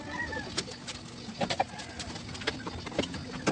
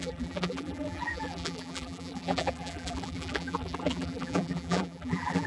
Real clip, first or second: first